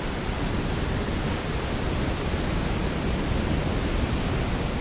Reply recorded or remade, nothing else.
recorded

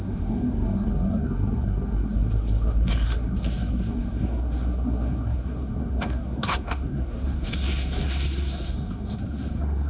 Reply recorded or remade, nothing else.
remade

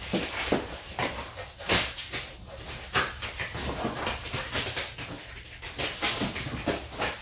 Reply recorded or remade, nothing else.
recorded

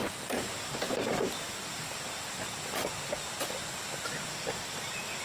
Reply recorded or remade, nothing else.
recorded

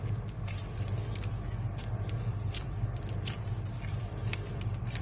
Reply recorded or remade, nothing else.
recorded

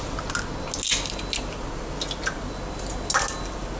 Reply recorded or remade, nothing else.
recorded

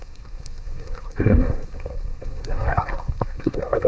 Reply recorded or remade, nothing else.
remade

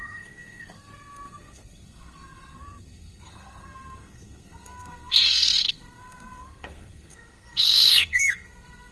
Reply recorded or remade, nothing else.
remade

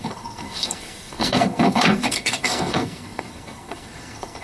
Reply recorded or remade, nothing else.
remade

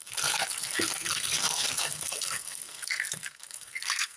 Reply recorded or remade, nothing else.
remade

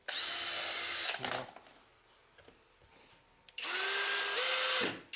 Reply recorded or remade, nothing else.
recorded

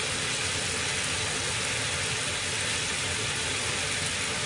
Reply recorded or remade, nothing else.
recorded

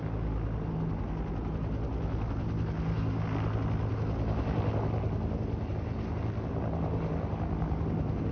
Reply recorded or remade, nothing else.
recorded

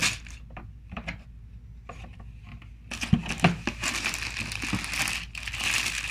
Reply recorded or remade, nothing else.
recorded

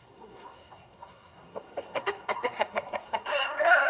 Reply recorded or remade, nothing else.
remade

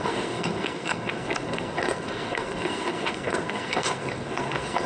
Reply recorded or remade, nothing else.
remade